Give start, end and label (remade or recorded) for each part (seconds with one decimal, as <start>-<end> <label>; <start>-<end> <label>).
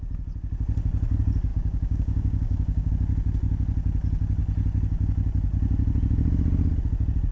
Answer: 0.0-1.5 recorded; 1.5-2.9 remade; 2.9-7.3 recorded